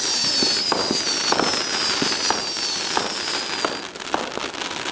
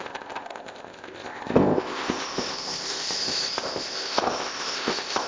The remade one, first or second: second